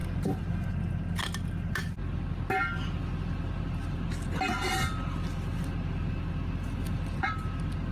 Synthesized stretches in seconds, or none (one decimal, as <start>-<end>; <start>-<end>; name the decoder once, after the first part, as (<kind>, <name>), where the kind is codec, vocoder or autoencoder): 0.0-0.7 (vocoder, BigVGAN v2)

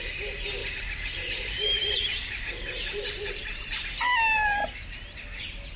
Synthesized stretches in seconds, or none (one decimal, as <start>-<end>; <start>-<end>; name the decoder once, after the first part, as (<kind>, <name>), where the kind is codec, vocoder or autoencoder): 0.6-3.7 (vocoder, BigVGAN v2)

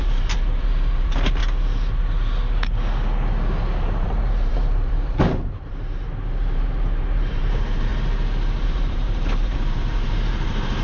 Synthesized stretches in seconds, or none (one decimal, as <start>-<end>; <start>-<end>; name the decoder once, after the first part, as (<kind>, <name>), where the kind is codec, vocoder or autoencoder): 0.0-1.4 (vocoder, BigVGAN v2); 3.8-7.9; 8.6-10.8